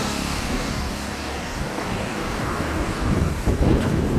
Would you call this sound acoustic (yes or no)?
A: no